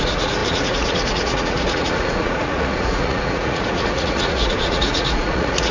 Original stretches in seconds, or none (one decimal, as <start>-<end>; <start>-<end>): none